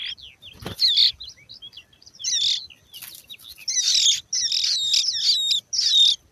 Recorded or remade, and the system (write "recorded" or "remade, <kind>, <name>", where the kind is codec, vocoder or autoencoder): recorded